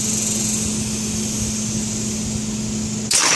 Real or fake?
real